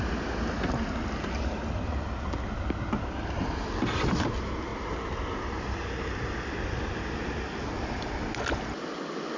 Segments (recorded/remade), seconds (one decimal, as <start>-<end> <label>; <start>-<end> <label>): 0.0-9.4 recorded